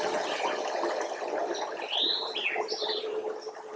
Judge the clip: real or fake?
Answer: real